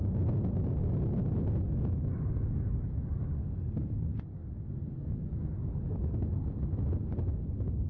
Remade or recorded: recorded